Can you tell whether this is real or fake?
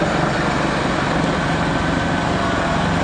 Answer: real